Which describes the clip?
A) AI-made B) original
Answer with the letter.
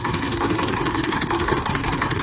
A